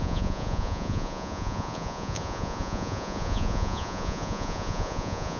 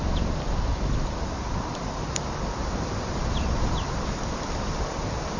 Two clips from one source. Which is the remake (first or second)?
first